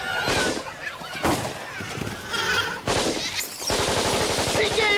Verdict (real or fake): real